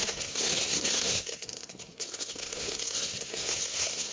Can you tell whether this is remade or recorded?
remade